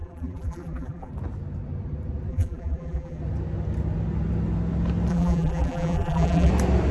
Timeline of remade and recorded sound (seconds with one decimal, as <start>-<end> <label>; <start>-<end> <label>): 0.0-1.1 remade; 1.1-2.3 recorded; 2.3-3.2 remade; 3.2-5.1 recorded; 5.1-6.5 remade; 6.5-6.9 recorded